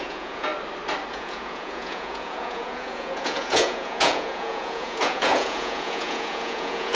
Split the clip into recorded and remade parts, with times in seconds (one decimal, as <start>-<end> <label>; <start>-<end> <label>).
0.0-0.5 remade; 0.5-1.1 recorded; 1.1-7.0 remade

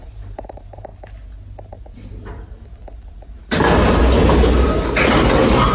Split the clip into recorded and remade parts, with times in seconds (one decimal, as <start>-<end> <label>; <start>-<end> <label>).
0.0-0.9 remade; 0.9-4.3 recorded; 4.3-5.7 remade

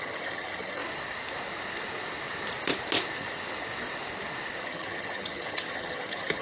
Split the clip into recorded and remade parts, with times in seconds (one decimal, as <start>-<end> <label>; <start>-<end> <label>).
0.0-0.8 remade; 0.8-4.6 recorded; 4.6-6.4 remade

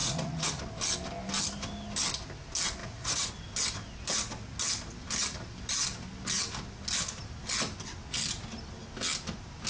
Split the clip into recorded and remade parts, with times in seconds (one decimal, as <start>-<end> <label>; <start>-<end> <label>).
0.0-0.6 remade; 0.6-2.8 recorded; 2.8-3.3 remade; 3.3-9.7 recorded

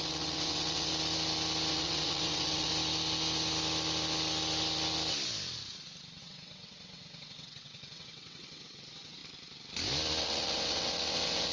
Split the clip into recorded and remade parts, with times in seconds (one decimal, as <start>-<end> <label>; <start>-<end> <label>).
0.0-0.9 remade; 0.9-1.7 recorded; 1.7-2.7 remade; 2.7-6.2 recorded; 6.2-9.2 remade; 9.2-10.2 recorded; 10.2-11.5 remade

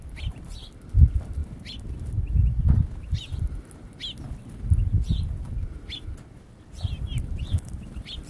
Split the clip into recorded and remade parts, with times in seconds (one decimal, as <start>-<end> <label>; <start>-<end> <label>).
0.0-1.4 remade; 1.4-6.4 recorded; 6.4-8.3 remade

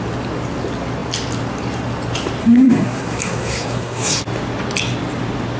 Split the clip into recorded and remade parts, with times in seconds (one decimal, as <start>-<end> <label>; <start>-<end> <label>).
0.0-2.4 recorded; 2.4-4.2 remade; 4.2-5.6 recorded